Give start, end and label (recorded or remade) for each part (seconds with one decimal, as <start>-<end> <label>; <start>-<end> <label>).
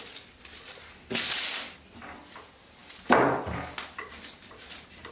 0.0-5.1 recorded